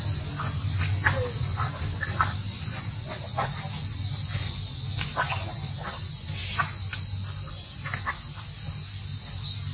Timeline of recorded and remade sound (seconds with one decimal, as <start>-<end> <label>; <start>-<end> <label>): 0.0-9.7 recorded

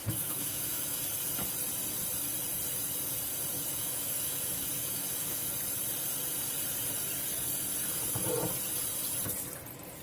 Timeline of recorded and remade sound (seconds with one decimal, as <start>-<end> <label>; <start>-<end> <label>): 0.0-1.0 remade; 1.0-3.7 recorded; 3.7-5.5 remade; 5.5-10.0 recorded

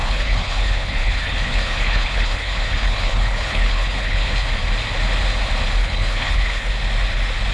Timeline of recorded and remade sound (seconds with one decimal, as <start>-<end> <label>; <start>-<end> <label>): 0.0-4.5 remade; 4.5-5.8 recorded; 5.8-6.7 remade; 6.7-7.5 recorded

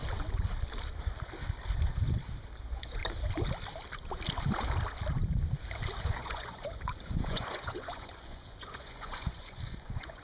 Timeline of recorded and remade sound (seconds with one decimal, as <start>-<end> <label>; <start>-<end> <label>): 0.0-2.6 recorded; 2.6-3.0 remade; 3.0-6.0 recorded; 6.0-10.2 remade

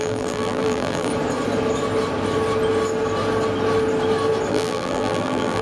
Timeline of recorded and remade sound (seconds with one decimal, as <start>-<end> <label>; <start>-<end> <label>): 0.0-1.1 remade; 1.1-4.5 recorded; 4.5-5.6 remade